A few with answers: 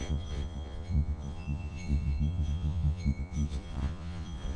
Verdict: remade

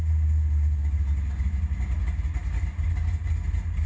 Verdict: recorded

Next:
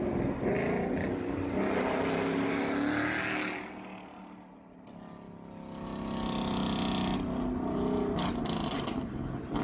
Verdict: recorded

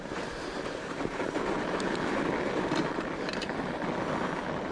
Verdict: recorded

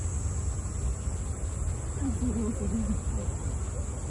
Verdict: recorded